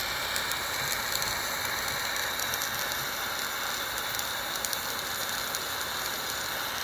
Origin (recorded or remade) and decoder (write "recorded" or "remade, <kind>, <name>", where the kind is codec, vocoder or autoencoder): recorded